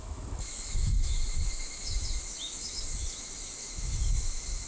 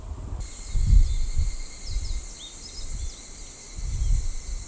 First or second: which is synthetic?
first